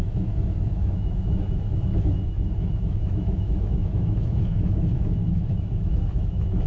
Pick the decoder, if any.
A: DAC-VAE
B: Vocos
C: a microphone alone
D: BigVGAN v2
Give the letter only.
A